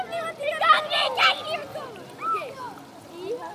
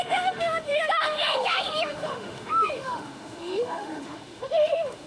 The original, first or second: first